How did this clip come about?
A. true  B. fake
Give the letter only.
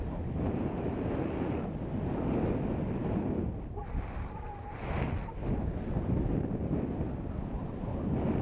A